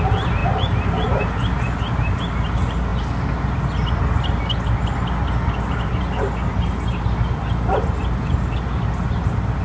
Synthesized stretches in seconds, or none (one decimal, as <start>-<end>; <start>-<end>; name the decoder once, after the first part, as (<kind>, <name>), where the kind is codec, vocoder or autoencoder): none